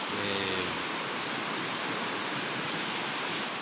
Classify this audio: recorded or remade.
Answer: recorded